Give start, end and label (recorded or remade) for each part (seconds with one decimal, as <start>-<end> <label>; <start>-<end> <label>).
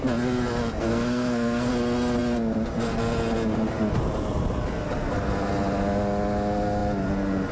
0.0-0.8 recorded; 0.8-1.7 remade; 1.7-7.5 recorded